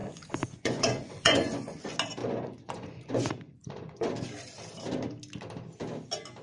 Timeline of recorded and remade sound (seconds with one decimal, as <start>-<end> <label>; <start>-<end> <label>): 0.0-1.8 remade; 1.8-2.2 recorded; 2.2-4.1 remade; 4.1-6.4 recorded